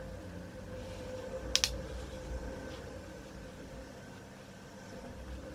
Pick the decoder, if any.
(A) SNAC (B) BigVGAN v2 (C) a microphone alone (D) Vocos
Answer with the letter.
C